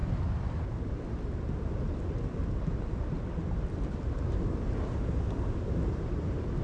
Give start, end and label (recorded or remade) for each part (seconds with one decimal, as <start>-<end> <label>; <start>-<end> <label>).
0.0-6.6 recorded